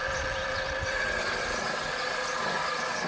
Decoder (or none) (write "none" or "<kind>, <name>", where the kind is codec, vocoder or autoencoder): none